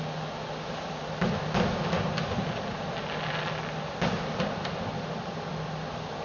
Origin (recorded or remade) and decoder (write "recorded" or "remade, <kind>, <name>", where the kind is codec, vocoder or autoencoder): recorded